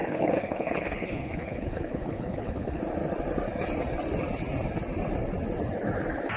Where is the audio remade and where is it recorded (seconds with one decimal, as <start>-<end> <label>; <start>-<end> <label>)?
0.0-2.8 remade; 2.8-6.4 recorded

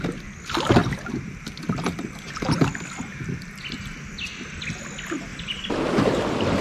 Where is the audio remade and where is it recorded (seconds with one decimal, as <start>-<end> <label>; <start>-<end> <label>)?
0.0-6.6 recorded

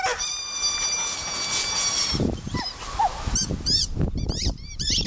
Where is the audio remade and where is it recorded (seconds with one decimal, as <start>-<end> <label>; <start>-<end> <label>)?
0.0-2.0 recorded; 2.0-2.8 remade; 2.8-3.4 recorded; 3.4-5.1 remade

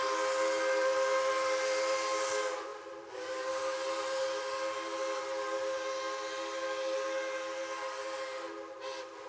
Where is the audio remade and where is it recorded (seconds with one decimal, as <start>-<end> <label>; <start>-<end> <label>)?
0.0-2.7 recorded; 2.7-5.2 remade; 5.2-9.3 recorded

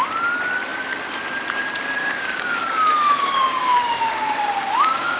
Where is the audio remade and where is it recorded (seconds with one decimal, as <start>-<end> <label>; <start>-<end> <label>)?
0.0-2.0 recorded; 2.0-5.2 remade